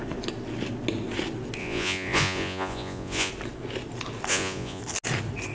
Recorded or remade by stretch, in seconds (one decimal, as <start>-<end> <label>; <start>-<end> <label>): 0.0-1.6 recorded; 1.6-3.3 remade; 3.3-4.3 recorded; 4.3-4.8 remade; 4.8-5.5 recorded